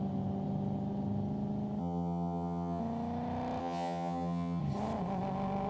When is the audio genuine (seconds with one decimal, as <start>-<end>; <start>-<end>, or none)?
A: 0.0-1.8; 2.8-3.6; 4.6-5.7